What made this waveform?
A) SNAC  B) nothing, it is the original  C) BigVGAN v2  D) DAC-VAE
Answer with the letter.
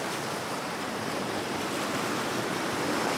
B